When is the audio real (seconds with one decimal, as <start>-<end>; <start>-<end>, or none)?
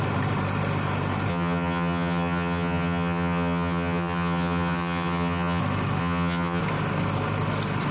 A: 0.0-1.3; 5.6-6.0; 6.6-7.9